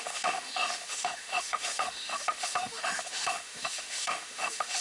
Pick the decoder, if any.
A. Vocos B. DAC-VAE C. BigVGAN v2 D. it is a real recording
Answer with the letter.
B